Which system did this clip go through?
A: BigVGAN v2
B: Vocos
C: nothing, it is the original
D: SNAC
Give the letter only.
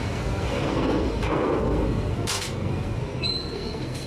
D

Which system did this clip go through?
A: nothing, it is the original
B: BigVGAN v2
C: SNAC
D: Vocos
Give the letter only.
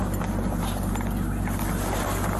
A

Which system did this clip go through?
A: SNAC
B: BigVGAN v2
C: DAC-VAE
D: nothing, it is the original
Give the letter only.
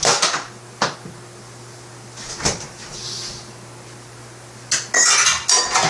D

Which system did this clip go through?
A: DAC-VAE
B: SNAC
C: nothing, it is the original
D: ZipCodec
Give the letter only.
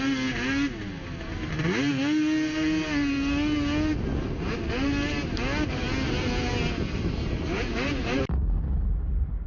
C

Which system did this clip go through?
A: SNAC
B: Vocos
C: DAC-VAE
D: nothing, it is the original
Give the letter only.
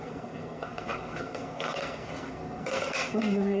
A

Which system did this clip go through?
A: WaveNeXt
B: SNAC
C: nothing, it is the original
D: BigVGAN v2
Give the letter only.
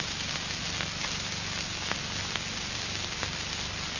C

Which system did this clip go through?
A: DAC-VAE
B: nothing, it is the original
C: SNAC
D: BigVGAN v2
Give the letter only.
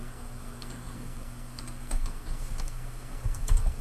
C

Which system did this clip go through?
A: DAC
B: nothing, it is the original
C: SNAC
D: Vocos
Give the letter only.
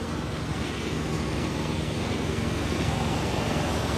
C